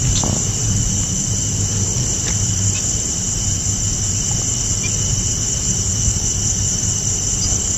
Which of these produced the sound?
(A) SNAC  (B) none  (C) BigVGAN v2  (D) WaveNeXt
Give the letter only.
B